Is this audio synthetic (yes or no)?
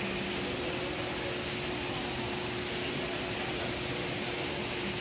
no